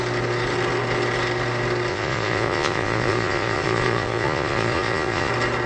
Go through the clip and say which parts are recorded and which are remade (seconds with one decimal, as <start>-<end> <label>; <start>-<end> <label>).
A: 0.0-1.9 recorded; 1.9-5.3 remade; 5.3-5.7 recorded